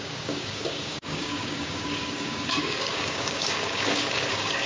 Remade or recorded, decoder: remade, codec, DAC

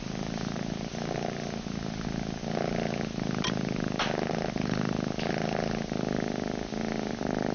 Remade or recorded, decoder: recorded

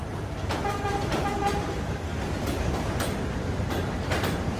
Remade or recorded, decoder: recorded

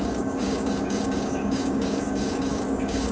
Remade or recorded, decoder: remade, codec, DAC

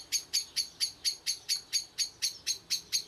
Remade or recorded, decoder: recorded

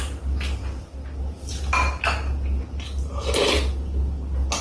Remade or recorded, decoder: recorded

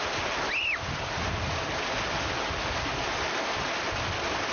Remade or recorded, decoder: recorded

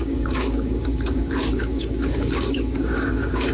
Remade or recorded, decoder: remade, codec, DAC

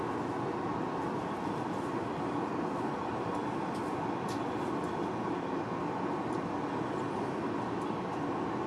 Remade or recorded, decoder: recorded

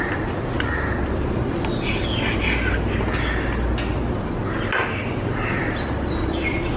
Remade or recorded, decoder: recorded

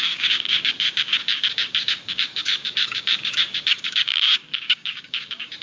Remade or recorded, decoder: remade, codec, DAC